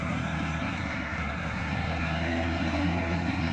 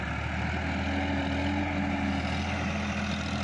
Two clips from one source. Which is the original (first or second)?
second